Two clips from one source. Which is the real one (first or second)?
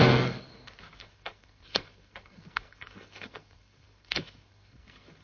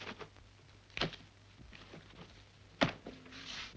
second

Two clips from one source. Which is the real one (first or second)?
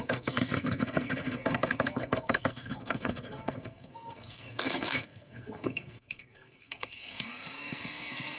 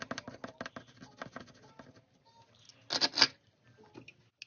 second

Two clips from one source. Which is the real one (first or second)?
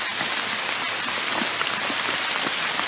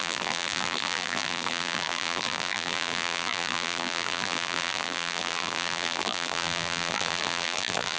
first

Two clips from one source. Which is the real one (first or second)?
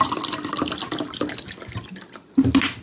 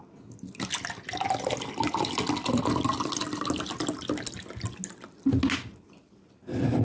second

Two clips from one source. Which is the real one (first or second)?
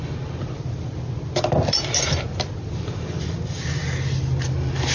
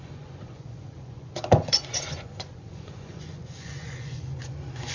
first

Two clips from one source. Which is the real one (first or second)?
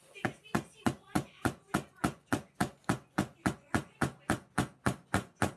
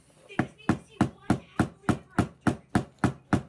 second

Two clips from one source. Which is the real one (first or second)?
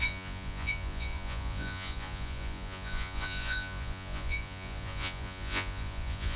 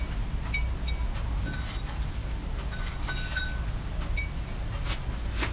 second